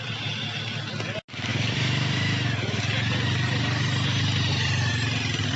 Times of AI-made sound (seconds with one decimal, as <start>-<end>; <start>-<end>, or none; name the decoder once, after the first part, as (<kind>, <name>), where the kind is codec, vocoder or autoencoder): 1.5-4.9 (vocoder, BigVGAN v2)